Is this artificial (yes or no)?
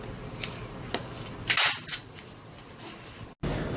no